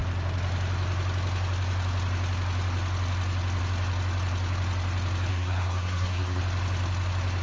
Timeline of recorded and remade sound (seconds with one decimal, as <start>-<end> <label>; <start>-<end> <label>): 0.0-5.3 recorded; 5.3-6.4 remade; 6.4-7.4 recorded